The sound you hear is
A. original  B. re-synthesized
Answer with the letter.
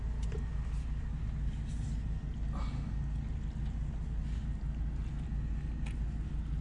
A